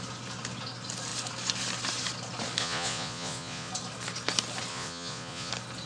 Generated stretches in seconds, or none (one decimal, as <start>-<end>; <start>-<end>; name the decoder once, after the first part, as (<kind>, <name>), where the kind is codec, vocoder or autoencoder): 2.6-3.7 (vocoder, Vocos); 4.7-5.5